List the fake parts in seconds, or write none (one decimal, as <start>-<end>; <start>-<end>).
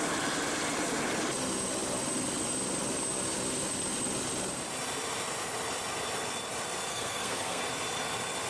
6.9-7.6